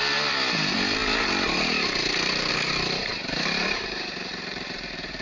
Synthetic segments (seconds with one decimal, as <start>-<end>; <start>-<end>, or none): 3.1-5.2